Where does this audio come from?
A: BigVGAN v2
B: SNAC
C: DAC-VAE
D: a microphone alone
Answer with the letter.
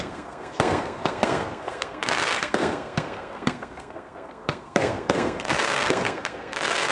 B